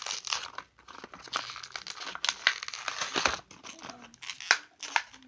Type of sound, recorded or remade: recorded